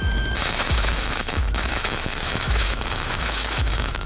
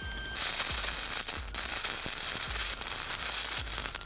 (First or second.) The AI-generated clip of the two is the first